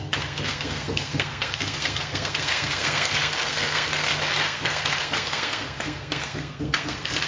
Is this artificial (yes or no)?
yes